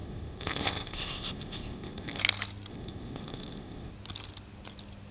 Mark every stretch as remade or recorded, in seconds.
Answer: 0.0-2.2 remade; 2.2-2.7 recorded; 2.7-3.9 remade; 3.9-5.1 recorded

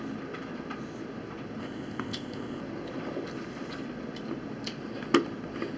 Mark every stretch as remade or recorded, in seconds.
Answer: 0.0-1.6 recorded; 1.6-2.6 remade; 2.6-5.8 recorded

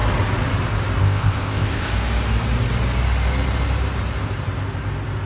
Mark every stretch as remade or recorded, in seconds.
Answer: 0.0-1.0 recorded; 1.0-1.9 remade; 1.9-5.3 recorded

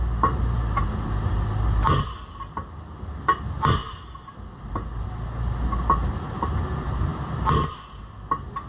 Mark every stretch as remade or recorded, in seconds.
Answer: 0.0-8.7 recorded

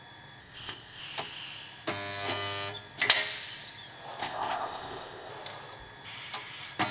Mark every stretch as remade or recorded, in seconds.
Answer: 0.0-0.4 recorded; 0.4-1.0 remade; 1.0-4.2 recorded; 4.2-5.3 remade; 5.3-6.9 recorded

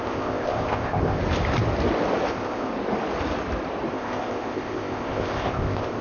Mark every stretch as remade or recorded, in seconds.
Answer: 0.0-1.2 remade; 1.2-2.3 recorded; 2.3-2.7 remade; 2.7-3.9 recorded; 3.9-6.0 remade